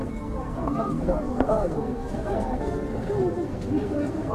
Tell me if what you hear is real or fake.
fake